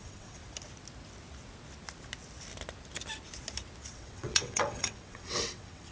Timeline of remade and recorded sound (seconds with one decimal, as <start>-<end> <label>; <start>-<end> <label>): 0.0-0.4 remade; 0.4-3.9 recorded; 3.9-5.9 remade